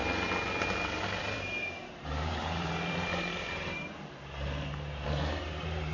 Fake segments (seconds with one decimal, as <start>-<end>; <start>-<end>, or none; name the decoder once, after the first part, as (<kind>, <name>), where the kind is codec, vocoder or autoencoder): 1.2-5.9 (vocoder, BigVGAN v2)